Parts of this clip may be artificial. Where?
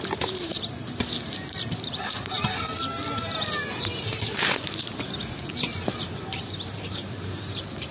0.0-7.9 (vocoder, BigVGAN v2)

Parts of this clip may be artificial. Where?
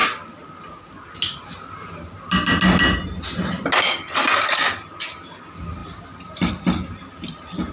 5.8-6.5 (vocoder, BigVGAN v2)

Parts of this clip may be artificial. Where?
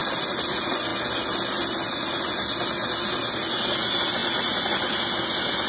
none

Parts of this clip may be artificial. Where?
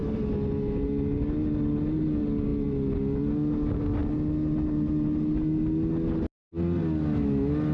none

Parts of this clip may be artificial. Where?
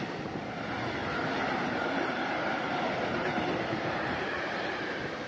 1.0-4.2 (vocoder, BigVGAN v2)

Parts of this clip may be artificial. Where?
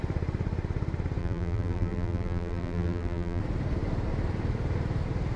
1.2-3.4 (vocoder, BigVGAN v2)